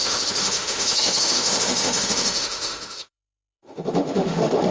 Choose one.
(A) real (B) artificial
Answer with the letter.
B